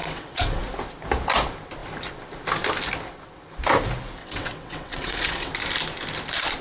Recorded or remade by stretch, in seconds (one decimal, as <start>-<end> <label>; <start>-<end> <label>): 0.0-0.6 remade; 0.6-4.2 recorded; 4.2-5.5 remade; 5.5-6.6 recorded